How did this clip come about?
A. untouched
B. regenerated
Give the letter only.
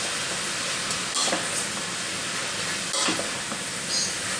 A